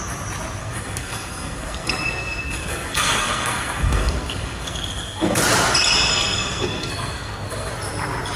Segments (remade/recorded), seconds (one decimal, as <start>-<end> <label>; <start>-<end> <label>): 0.0-0.6 recorded; 0.6-5.4 remade; 5.4-6.1 recorded; 6.1-7.7 remade; 7.7-8.4 recorded